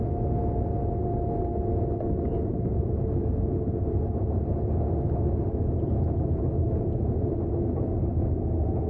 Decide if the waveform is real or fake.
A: real